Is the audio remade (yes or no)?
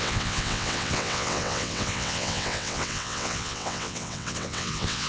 yes